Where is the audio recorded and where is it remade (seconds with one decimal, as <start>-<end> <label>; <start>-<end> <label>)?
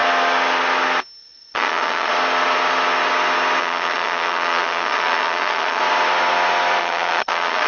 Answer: 0.0-1.2 recorded; 1.2-2.1 remade; 2.1-3.6 recorded; 3.6-5.8 remade; 5.8-6.8 recorded; 6.8-7.7 remade